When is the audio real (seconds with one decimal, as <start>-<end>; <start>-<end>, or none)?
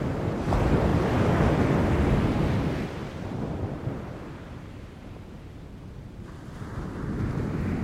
0.0-7.8